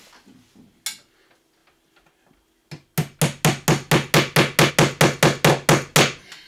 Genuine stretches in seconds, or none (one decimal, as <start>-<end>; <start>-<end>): 0.0-6.5

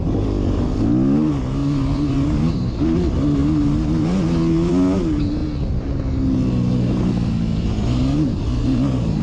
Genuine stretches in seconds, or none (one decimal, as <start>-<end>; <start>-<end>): 0.0-1.6; 2.8-9.2

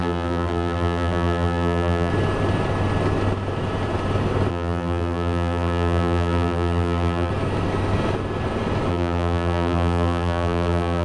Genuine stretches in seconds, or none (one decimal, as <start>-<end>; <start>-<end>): 2.1-4.5; 7.3-8.9